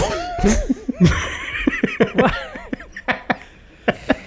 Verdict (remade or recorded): recorded